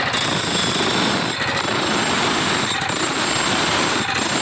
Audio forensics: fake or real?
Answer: real